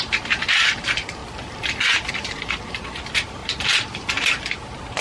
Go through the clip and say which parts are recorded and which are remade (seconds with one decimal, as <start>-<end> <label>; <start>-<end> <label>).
0.0-1.2 remade; 1.2-2.1 recorded; 2.1-5.0 remade